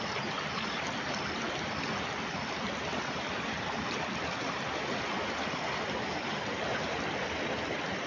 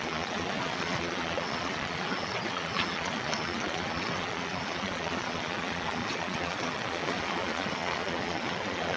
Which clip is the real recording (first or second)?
first